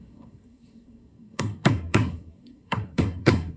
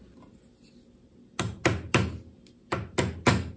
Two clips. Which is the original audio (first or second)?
second